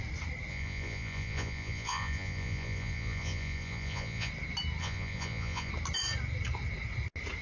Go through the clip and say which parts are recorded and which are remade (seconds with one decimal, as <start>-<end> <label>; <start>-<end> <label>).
0.0-0.5 recorded; 0.5-4.3 remade; 4.3-4.8 recorded; 4.8-5.7 remade; 5.7-7.4 recorded